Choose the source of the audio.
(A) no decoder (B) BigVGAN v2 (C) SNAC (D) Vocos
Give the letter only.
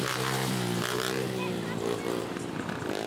B